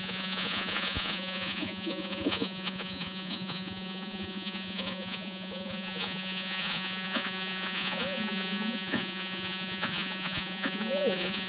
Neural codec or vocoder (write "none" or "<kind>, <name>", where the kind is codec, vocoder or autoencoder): vocoder, Vocos